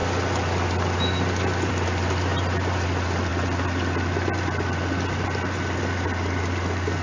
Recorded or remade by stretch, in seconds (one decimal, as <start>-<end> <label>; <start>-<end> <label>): 0.0-7.0 recorded

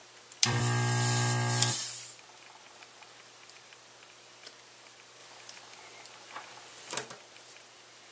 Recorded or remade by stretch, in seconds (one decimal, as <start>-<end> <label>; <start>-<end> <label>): 0.0-5.2 remade; 5.2-6.9 recorded; 6.9-8.1 remade

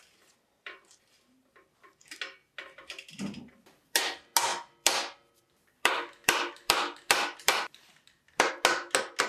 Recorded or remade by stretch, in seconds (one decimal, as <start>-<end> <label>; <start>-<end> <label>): 0.0-2.4 recorded; 2.4-4.0 remade; 4.0-4.5 recorded; 4.5-8.5 remade; 8.5-9.3 recorded

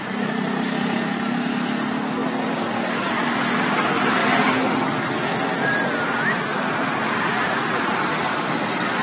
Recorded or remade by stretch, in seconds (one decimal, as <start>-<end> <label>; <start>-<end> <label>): 0.0-6.5 recorded; 6.5-8.4 remade; 8.4-9.0 recorded

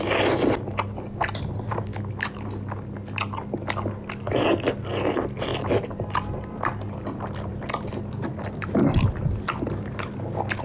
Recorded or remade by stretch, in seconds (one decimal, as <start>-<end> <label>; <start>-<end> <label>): 0.0-5.5 recorded; 5.5-9.4 remade; 9.4-10.6 recorded

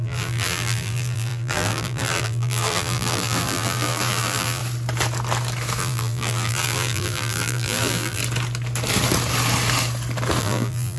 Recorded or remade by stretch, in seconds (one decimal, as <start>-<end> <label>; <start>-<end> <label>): 0.0-4.6 remade; 4.6-5.8 recorded; 5.8-8.2 remade; 8.2-10.4 recorded; 10.4-11.0 remade